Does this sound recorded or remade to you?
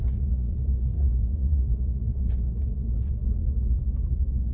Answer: remade